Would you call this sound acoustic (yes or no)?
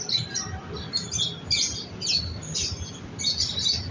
yes